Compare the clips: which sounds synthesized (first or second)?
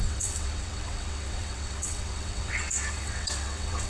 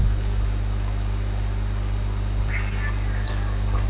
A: first